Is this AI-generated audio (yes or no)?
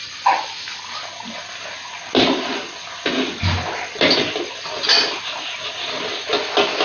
no